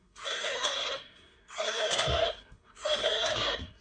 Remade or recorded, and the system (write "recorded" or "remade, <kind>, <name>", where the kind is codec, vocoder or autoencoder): remade, codec, SNAC